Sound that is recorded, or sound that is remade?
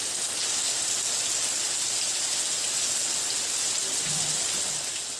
recorded